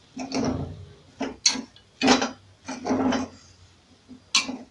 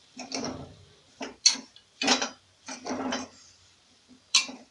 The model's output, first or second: second